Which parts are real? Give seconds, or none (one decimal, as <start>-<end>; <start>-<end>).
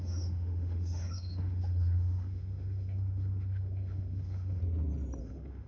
4.6-5.2